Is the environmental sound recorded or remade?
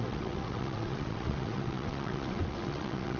remade